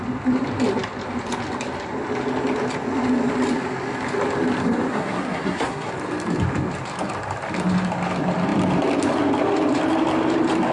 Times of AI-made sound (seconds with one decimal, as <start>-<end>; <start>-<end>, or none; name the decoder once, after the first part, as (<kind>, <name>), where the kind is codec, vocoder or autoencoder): 4.9-5.9 (codec, SNAC)